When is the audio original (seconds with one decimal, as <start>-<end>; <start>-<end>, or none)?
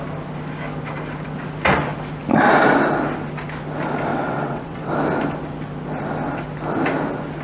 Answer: 0.0-4.1; 4.9-7.4